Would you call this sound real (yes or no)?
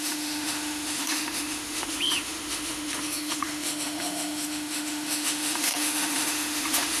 no